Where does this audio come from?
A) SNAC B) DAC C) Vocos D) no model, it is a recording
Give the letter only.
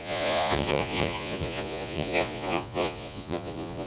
C